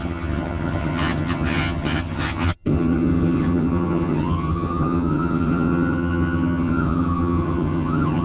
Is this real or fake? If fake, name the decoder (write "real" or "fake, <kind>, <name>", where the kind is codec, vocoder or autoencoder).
fake, vocoder, HiFi-GAN